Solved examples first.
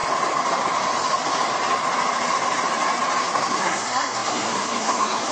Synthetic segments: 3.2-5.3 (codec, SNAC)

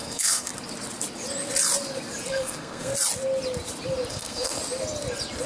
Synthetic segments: 0.0-0.5 (codec, SNAC); 2.3-2.9; 4.1-4.6

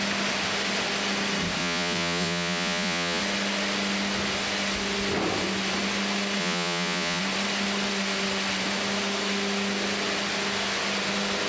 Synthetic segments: 1.6-3.2 (vocoder, Vocos); 6.4-7.2

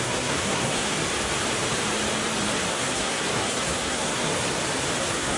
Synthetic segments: 0.0-1.0 (codec, SNAC); 2.7-4.3; 5.0-5.4

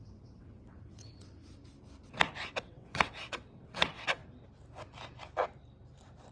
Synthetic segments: 0.0-1.4 (vocoder, WaveNeXt); 2.6-4.2

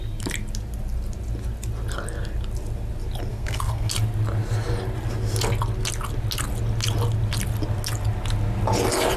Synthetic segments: 3.3-3.9 (codec, SNAC)